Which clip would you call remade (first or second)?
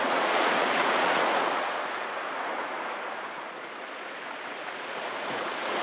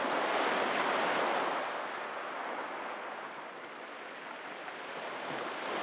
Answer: first